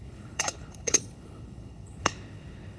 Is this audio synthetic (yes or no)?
yes